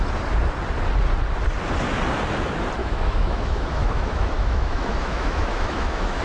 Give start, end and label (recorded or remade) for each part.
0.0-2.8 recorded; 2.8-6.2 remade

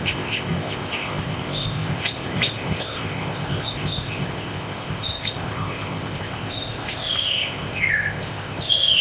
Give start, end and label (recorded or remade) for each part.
0.0-9.0 remade

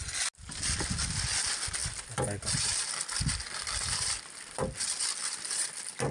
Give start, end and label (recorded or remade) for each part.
0.0-6.1 recorded

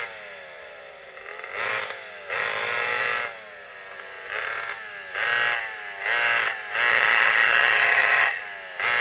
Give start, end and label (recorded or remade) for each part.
0.0-6.9 recorded; 6.9-8.4 remade; 8.4-9.0 recorded

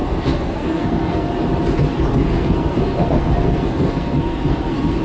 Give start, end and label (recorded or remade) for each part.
0.0-1.3 remade; 1.3-1.9 recorded; 1.9-5.0 remade

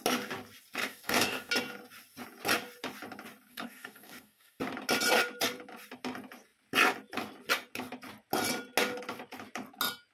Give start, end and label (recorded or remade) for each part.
0.0-0.8 recorded; 0.8-1.5 remade; 1.5-3.5 recorded; 3.5-4.6 remade; 4.6-10.1 recorded

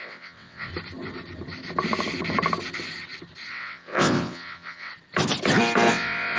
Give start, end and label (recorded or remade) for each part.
0.0-0.7 remade; 0.7-3.5 recorded; 3.5-4.9 remade; 4.9-5.9 recorded; 5.9-6.4 remade

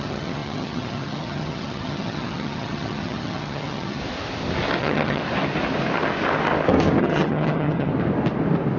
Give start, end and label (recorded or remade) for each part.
0.0-4.0 remade; 4.0-4.8 recorded; 4.8-5.2 remade; 5.2-7.0 recorded; 7.0-7.9 remade; 7.9-8.8 recorded